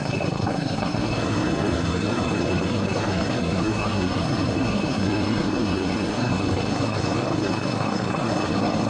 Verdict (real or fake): fake